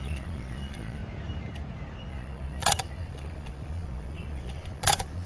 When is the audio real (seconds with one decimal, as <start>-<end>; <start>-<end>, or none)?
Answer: 1.0-2.1

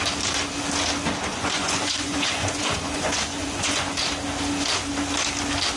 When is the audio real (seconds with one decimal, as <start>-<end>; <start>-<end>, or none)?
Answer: 0.0-1.3; 4.0-5.8

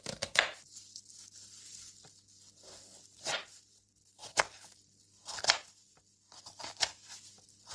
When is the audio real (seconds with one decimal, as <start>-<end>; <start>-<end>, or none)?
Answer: 0.0-7.7

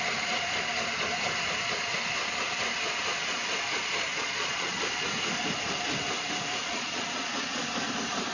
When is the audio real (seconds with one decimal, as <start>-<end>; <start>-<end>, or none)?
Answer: 0.0-4.1; 4.8-6.6; 7.6-8.3

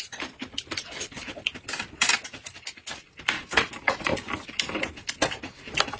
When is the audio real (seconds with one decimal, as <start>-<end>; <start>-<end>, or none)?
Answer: 0.0-6.0

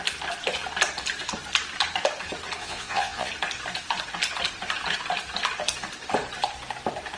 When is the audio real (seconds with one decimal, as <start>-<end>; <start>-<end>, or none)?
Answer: 0.0-2.6; 3.3-7.2

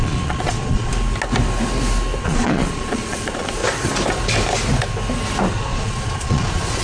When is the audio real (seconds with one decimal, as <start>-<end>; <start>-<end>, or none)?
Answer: 0.9-2.2; 3.6-5.5

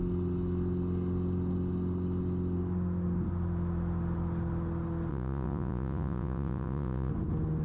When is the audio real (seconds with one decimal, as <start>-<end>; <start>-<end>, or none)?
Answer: 0.0-5.1; 7.1-7.6